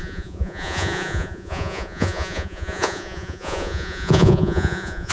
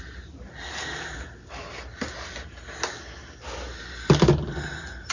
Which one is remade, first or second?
first